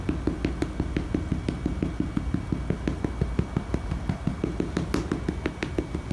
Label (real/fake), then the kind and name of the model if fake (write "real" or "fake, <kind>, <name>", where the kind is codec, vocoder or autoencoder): real